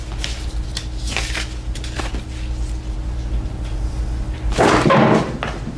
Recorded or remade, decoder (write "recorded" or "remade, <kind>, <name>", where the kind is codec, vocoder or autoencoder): recorded